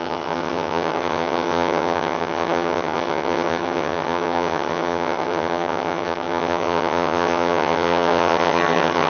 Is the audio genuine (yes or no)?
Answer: no